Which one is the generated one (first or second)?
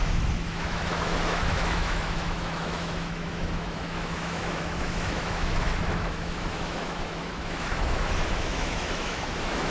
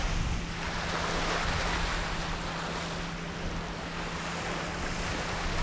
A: first